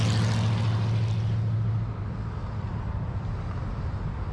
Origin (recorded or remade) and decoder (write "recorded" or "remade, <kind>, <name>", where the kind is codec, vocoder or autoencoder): recorded